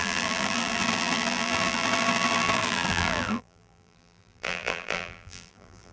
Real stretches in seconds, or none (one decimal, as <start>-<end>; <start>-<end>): none